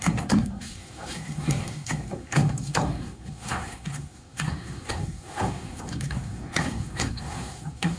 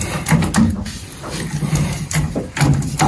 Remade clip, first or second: first